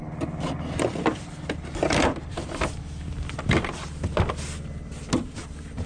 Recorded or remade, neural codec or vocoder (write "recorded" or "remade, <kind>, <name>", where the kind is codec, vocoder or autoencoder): recorded